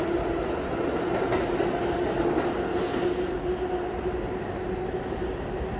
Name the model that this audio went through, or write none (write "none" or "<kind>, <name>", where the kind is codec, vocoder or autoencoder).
none